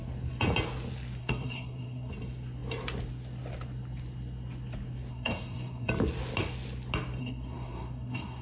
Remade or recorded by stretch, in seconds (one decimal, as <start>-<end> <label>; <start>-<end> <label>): 0.0-1.2 recorded; 1.2-2.1 remade; 2.1-5.1 recorded; 5.1-5.9 remade; 5.9-7.2 recorded; 7.2-8.4 remade